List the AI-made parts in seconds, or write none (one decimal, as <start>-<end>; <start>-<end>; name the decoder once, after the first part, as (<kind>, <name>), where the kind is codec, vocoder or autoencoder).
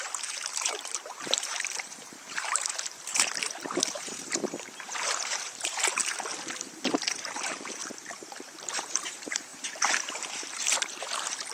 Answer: 0.0-6.0 (vocoder, BigVGAN v2); 7.0-7.8; 8.7-11.5